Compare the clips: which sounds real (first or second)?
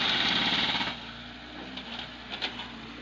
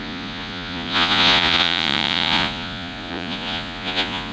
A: first